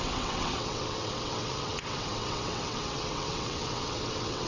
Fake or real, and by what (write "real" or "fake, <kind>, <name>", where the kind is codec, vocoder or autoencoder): fake, vocoder, WaveNeXt